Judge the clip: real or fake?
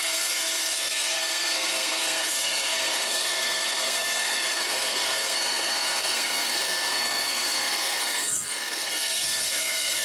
fake